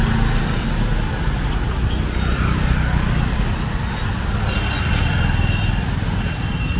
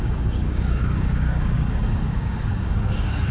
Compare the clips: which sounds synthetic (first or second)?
second